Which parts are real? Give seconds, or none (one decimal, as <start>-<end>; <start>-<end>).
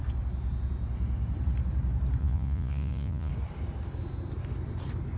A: 0.0-2.2; 3.3-5.2